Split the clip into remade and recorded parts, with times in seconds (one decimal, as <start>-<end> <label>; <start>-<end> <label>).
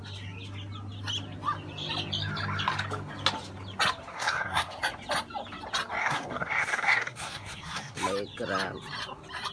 0.0-4.1 recorded; 4.1-4.8 remade; 4.8-6.0 recorded; 6.0-8.0 remade; 8.0-9.5 recorded